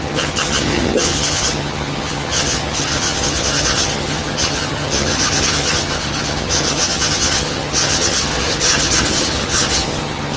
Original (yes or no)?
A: no